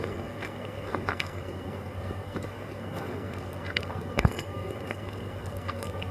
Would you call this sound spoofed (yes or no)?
yes